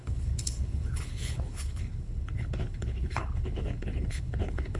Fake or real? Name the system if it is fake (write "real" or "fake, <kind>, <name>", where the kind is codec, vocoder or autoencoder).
fake, codec, HILCodec